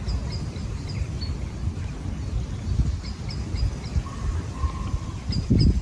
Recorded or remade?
recorded